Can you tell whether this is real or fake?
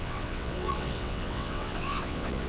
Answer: fake